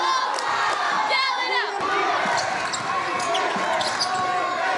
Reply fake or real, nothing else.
real